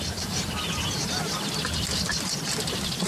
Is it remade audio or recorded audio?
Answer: recorded